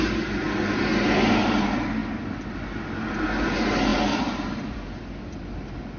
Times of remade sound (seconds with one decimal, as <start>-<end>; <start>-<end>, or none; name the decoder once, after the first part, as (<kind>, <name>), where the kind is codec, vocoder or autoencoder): none